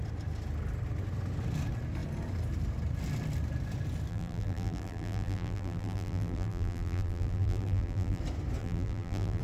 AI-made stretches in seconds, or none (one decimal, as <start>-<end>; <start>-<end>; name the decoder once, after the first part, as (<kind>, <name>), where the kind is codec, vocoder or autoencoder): 4.1-8.2 (vocoder, BigVGAN v2); 8.6-9.4